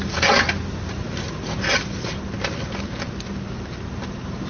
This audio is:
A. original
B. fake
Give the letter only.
A